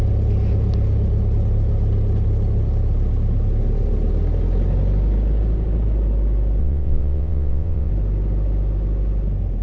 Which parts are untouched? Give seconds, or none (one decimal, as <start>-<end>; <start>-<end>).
0.0-6.6; 7.9-9.6